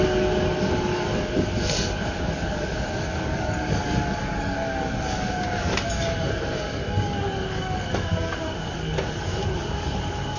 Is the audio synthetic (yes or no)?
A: yes